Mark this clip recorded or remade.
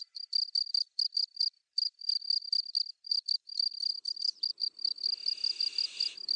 recorded